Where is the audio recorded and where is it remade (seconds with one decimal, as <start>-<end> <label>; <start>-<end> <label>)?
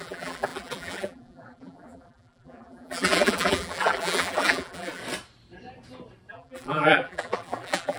0.0-5.0 remade; 5.0-6.3 recorded; 6.3-8.0 remade